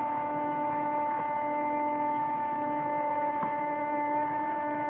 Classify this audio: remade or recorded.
remade